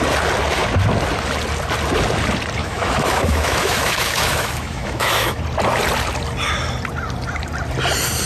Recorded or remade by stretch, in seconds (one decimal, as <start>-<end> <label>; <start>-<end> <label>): 0.0-2.6 recorded; 2.6-5.4 remade; 5.4-8.3 recorded